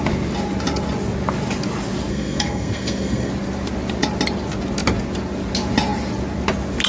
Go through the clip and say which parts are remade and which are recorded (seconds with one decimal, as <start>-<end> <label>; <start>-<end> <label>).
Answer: 0.0-2.1 recorded; 2.1-3.3 remade; 3.3-6.9 recorded